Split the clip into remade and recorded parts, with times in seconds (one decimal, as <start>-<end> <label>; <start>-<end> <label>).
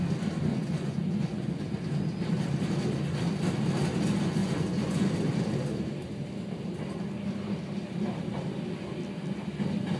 0.0-0.5 recorded; 0.5-1.6 remade; 1.6-4.4 recorded; 4.4-5.1 remade; 5.1-10.0 recorded